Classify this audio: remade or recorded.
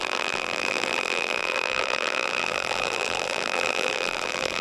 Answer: remade